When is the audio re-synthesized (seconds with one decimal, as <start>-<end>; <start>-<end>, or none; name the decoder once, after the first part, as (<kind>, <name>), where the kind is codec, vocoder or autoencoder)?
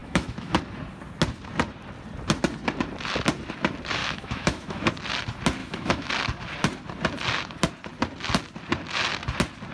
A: 0.0-0.6 (autoencoder, DAC-VAE); 4.0-4.9; 5.6-6.1